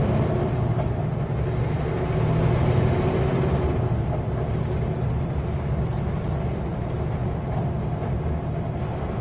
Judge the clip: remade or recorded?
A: recorded